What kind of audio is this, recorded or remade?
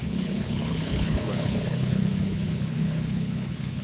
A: remade